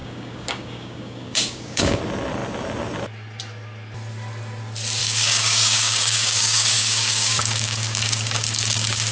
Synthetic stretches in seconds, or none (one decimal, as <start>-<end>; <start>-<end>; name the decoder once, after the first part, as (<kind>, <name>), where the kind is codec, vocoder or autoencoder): 0.0-2.0 (codec, DAC); 5.0-9.1